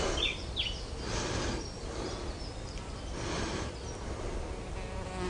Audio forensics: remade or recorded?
recorded